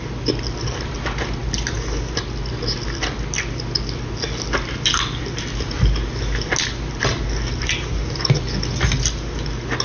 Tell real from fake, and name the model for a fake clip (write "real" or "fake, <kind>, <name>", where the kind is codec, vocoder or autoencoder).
real